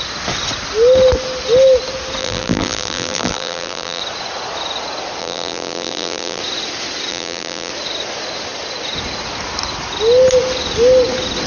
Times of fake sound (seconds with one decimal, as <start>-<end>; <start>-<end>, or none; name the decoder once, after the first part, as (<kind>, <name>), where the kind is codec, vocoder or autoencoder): 2.2-4.0 (vocoder, BigVGAN v2); 5.2-6.4; 7.1-7.7